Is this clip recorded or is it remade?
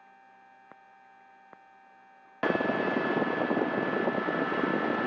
recorded